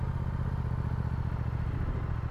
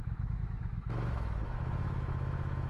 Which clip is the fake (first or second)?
second